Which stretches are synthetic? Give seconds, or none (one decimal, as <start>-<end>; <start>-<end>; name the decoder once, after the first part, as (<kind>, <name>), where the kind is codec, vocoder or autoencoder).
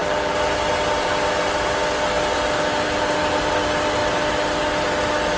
none